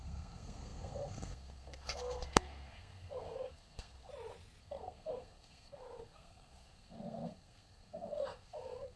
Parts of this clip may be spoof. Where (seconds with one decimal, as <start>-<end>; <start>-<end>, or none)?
0.0-4.1; 4.6-9.0